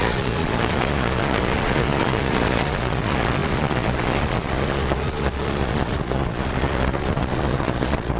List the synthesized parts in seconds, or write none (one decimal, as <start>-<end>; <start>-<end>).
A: 0.0-8.2